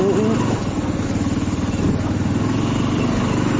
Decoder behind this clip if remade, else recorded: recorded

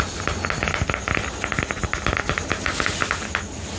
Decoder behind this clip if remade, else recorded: recorded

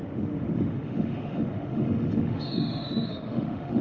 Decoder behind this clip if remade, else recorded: remade, autoencoder, DAC-VAE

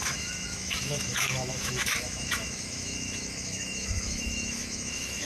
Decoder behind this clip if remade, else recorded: remade, autoencoder, DAC-VAE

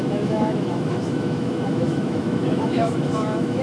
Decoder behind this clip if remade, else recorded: remade, autoencoder, DAC-VAE